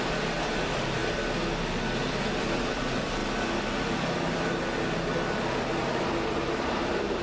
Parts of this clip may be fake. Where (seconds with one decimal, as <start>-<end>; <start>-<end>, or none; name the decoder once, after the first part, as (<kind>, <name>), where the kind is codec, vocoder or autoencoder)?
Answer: 0.0-1.0 (vocoder, BigVGAN v2); 2.4-3.2; 5.5-7.2